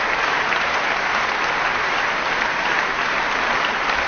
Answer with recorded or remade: recorded